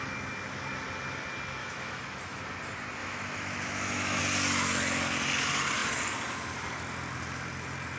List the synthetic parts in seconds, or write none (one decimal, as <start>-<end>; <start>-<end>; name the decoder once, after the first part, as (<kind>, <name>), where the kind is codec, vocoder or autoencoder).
1.6-2.4 (autoencoder, DAC-VAE); 3.0-4.2